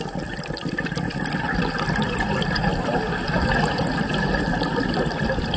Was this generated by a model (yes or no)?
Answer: no